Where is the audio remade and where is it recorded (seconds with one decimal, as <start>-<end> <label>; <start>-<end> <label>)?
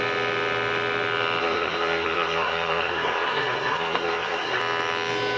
0.0-1.4 recorded; 1.4-4.6 remade; 4.6-5.4 recorded